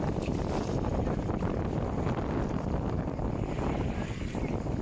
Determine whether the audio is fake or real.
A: real